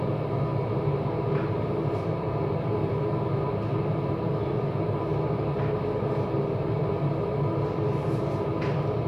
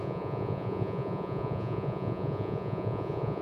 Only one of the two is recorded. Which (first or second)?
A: first